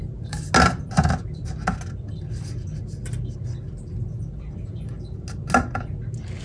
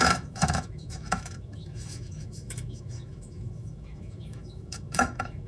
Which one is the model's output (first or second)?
second